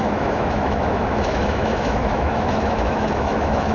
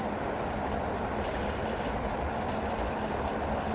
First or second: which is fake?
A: first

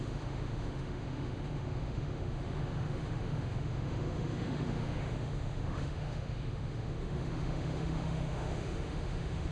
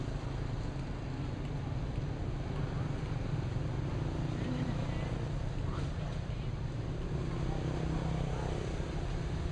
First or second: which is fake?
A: first